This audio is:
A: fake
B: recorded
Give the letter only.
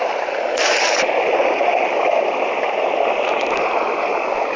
B